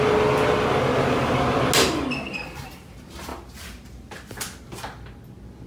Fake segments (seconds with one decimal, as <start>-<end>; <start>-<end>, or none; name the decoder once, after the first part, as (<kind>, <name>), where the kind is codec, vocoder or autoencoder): none